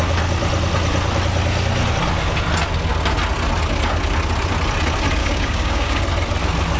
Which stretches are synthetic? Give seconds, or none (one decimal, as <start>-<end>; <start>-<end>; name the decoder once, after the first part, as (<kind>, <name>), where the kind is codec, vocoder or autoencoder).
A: 5.2-6.0 (codec, DAC)